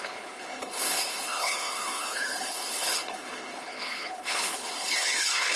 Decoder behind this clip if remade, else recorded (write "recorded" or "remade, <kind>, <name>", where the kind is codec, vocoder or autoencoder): remade, codec, HILCodec